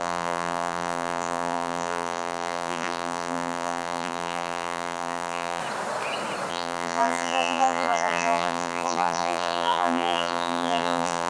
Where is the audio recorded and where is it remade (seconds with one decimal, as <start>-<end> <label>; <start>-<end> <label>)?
0.0-5.6 remade; 5.6-6.5 recorded; 6.5-11.3 remade